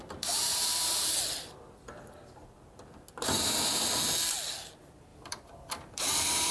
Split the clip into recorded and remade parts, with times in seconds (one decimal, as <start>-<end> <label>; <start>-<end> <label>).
0.0-0.5 recorded; 0.5-1.6 remade; 1.6-5.1 recorded; 5.1-6.5 remade